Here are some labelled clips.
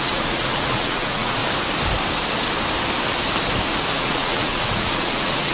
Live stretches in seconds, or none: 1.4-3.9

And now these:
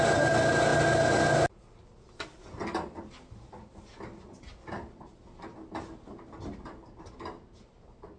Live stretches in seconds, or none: 0.0-8.2

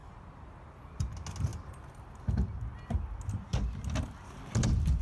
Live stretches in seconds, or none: 1.1-5.0

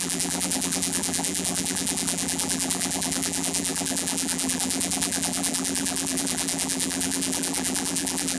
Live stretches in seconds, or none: none

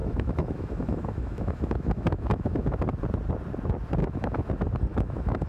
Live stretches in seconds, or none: 2.8-4.0; 4.5-4.9

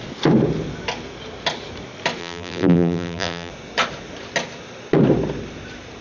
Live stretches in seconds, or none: 0.0-2.2; 3.5-6.0

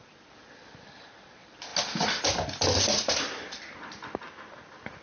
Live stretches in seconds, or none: 0.0-5.0